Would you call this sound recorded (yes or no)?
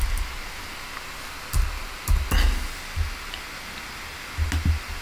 yes